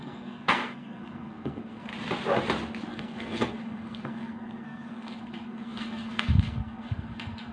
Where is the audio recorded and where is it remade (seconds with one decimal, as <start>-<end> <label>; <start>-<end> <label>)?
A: 0.0-1.9 remade; 1.9-2.9 recorded; 2.9-7.5 remade